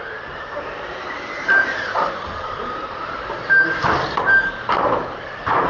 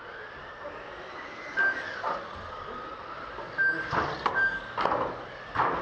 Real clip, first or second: second